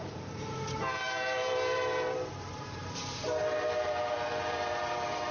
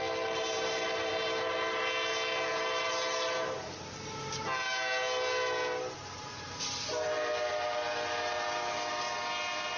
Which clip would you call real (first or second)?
second